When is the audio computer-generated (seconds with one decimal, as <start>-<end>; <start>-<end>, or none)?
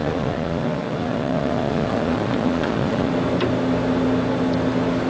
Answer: 0.0-3.1